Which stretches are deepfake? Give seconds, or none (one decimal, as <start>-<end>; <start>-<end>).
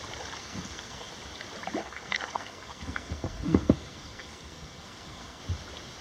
0.4-1.1; 1.8-5.4